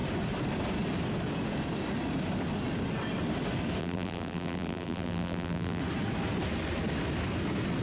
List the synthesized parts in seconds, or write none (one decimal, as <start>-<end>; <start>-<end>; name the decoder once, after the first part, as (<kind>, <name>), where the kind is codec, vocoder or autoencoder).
3.8-5.8 (vocoder, BigVGAN v2)